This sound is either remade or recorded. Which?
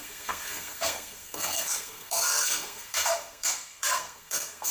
remade